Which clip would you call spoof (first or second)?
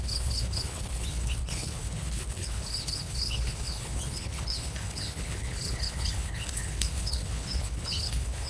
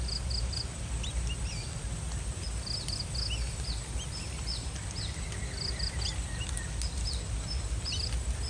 first